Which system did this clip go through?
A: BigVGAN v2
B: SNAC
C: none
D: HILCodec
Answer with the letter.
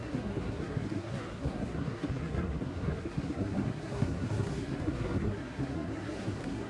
B